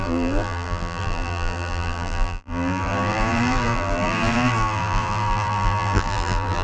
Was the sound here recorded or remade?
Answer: remade